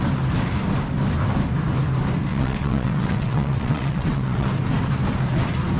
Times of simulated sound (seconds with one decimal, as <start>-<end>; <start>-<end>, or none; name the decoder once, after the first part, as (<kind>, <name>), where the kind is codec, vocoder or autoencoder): 2.3-4.5 (vocoder, WaveNeXt)